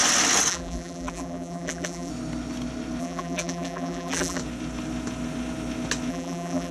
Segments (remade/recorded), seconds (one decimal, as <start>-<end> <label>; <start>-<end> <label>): 0.0-0.5 recorded; 0.5-2.1 remade; 2.1-3.0 recorded; 3.0-4.4 remade; 4.4-6.1 recorded; 6.1-6.7 remade